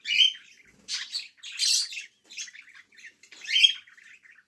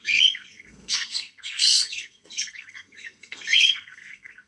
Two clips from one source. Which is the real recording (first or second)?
first